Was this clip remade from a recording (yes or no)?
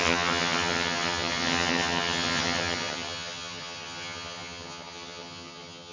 yes